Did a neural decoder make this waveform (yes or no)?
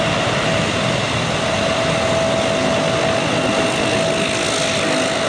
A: no